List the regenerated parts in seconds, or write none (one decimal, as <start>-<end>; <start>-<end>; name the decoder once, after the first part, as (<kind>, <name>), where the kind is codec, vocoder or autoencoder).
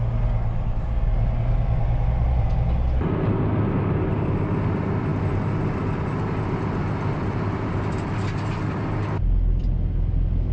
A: none